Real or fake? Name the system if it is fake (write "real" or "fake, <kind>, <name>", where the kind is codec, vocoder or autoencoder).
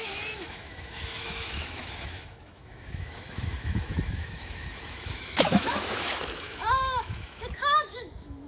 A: fake, autoencoder, DAC-VAE